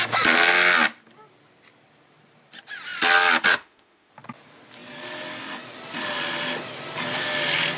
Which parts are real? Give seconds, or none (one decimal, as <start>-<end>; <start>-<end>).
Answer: 0.0-3.5; 4.1-7.8